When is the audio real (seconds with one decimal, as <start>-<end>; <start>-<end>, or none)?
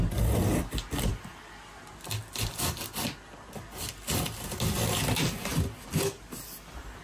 0.0-7.0